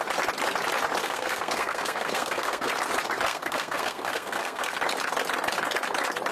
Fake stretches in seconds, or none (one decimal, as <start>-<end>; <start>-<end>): 1.0-2.7; 3.3-4.8